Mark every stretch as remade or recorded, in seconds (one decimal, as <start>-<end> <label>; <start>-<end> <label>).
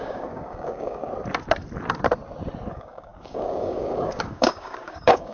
0.0-1.0 remade; 1.0-2.7 recorded; 2.7-5.3 remade